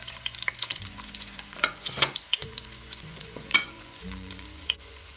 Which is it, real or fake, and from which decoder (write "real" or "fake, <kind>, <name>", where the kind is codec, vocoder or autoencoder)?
fake, vocoder, Vocos